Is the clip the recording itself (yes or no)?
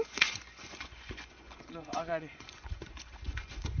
no